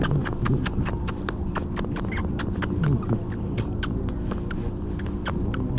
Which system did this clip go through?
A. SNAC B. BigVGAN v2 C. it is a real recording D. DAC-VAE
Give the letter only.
C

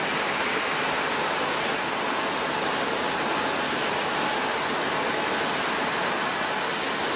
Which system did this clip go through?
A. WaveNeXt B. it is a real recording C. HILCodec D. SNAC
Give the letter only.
B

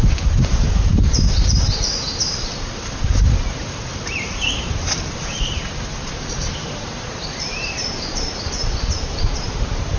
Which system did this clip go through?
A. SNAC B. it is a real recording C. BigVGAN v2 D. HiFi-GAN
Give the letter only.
C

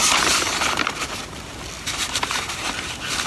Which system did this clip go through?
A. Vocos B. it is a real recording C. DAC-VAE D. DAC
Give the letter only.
B